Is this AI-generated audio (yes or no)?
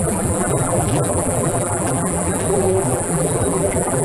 yes